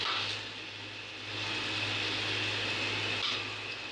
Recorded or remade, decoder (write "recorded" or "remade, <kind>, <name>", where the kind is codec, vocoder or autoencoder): recorded